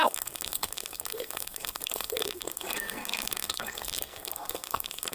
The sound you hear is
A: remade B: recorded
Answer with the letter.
A